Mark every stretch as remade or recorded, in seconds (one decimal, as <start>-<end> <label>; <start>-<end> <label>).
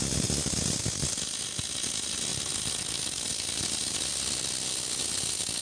0.0-5.6 recorded